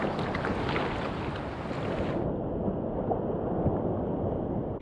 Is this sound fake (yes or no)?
no